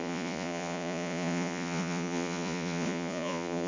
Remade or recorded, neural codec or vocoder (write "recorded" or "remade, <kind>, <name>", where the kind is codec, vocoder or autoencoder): remade, vocoder, Vocos